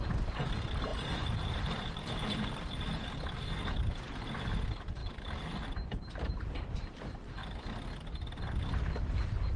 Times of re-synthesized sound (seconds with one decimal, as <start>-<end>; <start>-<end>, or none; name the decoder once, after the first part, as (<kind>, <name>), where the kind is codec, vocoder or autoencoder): 0.0-7.4 (vocoder, BigVGAN v2); 9.0-9.6